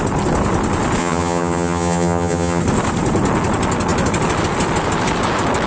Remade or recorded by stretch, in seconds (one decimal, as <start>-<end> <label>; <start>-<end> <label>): 0.0-1.0 recorded; 1.0-2.6 remade; 2.6-5.7 recorded